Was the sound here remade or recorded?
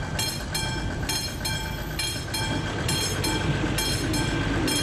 recorded